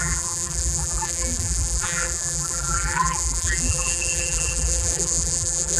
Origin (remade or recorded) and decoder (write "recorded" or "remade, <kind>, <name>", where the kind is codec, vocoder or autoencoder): remade, vocoder, BigVGAN v2